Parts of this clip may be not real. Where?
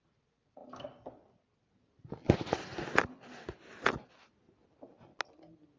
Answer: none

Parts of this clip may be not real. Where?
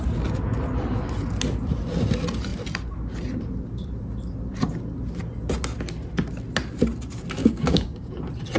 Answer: 7.4-8.1 (codec, DAC)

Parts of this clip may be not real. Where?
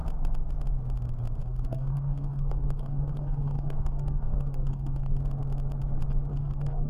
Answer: 1.4-5.2 (codec, DAC); 6.3-6.9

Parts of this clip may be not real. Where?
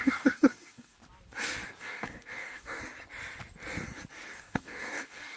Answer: 0.0-1.0 (codec, DAC); 1.8-2.8; 4.3-5.4